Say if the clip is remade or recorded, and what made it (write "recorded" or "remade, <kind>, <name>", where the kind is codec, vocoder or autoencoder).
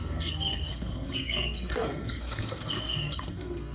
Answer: remade, codec, SNAC